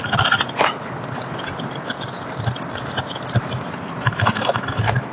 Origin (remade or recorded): recorded